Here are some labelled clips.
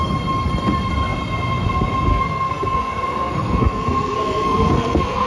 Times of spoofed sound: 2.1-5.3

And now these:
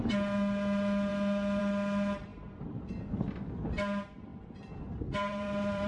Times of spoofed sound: 4.3-5.9

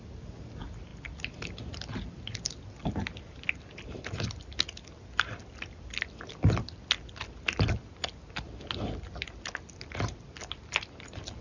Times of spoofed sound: none

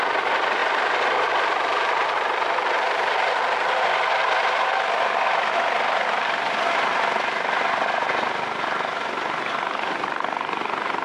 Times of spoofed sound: 0.6-3.8

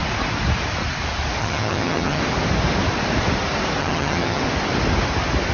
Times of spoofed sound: 1.4-2.2; 3.8-4.4

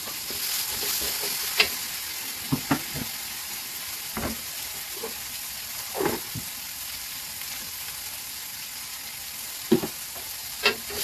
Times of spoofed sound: 3.4-4.0

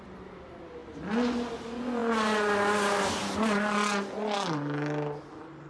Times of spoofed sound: none